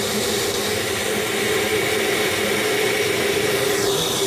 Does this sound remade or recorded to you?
recorded